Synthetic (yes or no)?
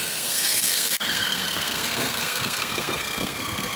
yes